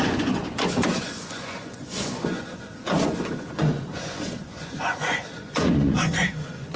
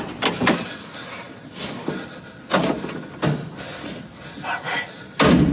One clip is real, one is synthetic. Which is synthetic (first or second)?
first